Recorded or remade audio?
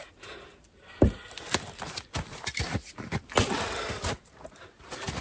recorded